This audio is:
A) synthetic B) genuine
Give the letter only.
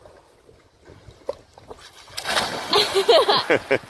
B